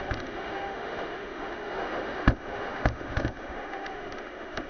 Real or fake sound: fake